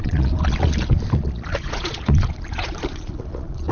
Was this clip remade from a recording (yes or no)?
yes